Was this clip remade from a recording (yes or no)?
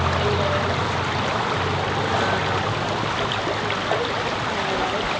no